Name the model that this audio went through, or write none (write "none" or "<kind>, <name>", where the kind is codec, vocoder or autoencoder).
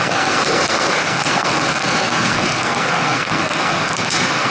codec, SNAC